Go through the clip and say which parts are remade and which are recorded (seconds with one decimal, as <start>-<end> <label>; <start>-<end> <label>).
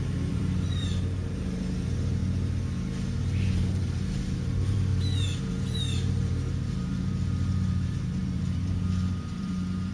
0.0-2.2 remade; 2.2-3.2 recorded; 3.2-9.9 remade